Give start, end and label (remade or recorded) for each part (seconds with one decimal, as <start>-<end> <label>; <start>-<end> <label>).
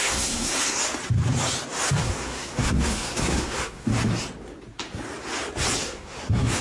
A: 0.0-0.8 remade; 0.8-2.0 recorded; 2.0-3.9 remade; 3.9-5.8 recorded; 5.8-6.6 remade